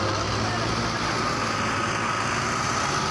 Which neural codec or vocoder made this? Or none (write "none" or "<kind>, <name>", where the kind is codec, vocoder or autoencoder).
none